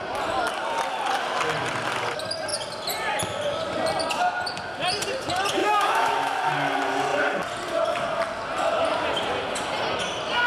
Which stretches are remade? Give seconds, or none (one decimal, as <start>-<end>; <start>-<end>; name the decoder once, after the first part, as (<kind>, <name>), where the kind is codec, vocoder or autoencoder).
5.6-6.5 (autoencoder, DAC-VAE)